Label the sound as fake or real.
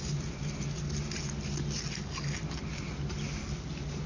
real